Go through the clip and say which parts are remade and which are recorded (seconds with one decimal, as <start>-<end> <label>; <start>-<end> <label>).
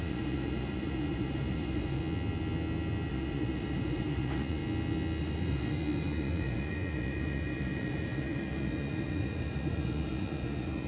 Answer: 0.0-2.0 remade; 2.0-3.1 recorded; 3.1-4.6 remade; 4.6-5.2 recorded; 5.2-10.9 remade